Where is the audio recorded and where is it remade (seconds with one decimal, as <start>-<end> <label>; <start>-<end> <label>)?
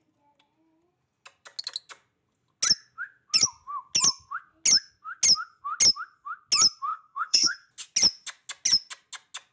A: 0.0-6.9 recorded; 6.9-7.7 remade; 7.7-9.5 recorded